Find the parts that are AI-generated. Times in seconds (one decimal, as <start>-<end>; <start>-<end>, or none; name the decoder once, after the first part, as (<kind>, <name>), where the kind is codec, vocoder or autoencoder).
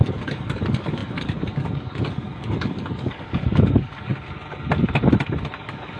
0.0-4.1 (codec, DAC); 5.6-6.0